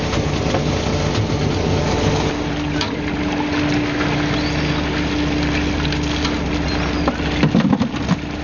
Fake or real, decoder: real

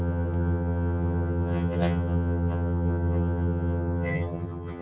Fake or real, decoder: fake, vocoder, HiFi-GAN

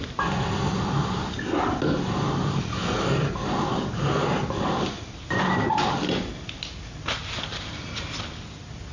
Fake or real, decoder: real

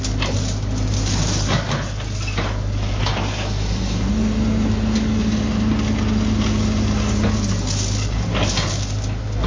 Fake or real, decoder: real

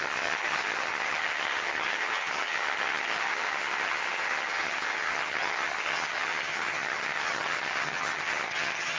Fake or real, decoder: fake, vocoder, HiFi-GAN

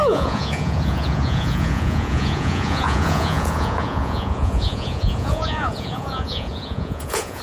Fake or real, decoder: fake, vocoder, Vocos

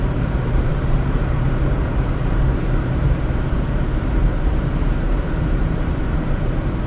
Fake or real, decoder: fake, vocoder, BigVGAN v2